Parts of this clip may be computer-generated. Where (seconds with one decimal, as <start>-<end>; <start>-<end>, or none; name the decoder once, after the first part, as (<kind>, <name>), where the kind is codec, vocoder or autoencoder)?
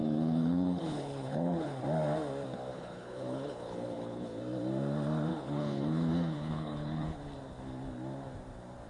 0.0-1.8 (codec, HILCodec); 2.7-4.4; 5.3-7.2